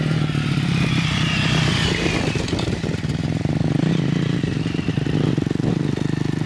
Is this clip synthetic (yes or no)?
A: no